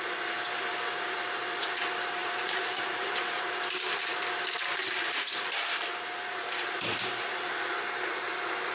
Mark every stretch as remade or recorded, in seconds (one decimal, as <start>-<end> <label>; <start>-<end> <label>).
0.0-2.2 recorded; 2.2-3.4 remade; 3.4-4.8 recorded; 4.8-7.5 remade; 7.5-8.7 recorded